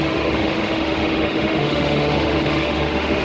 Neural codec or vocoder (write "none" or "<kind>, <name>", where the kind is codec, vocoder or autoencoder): autoencoder, DAC-VAE